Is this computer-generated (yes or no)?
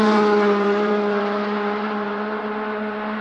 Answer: yes